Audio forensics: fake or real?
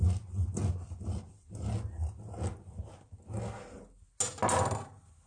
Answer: real